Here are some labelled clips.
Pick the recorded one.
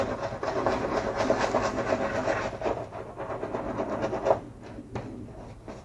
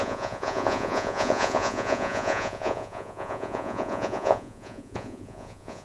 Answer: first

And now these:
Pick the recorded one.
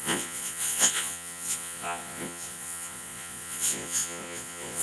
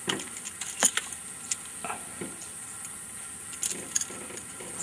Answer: second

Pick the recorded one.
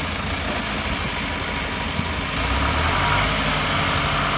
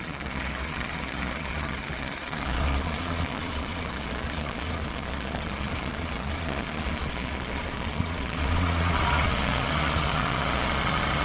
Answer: first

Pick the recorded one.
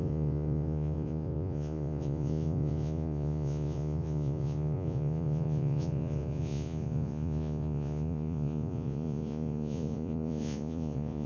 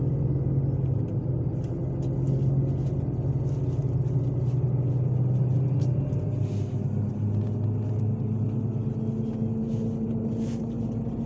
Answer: second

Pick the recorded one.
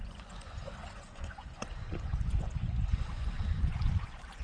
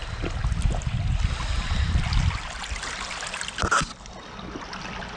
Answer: second